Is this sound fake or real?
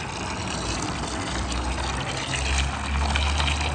real